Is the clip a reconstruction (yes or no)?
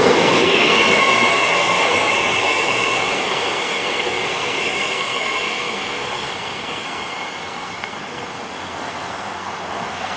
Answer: yes